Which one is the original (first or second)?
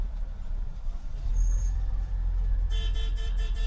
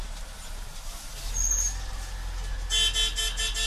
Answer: second